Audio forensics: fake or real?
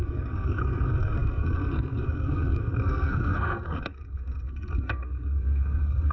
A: fake